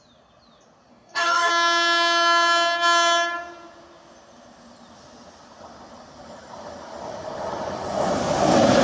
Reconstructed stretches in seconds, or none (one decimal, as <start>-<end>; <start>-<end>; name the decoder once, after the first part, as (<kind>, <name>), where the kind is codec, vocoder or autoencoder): 0.9-1.5 (codec, DAC)